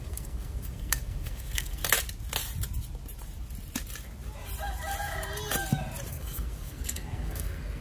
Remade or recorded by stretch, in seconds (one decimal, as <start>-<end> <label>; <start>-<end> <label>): 0.0-1.8 remade; 1.8-6.1 recorded; 6.1-7.8 remade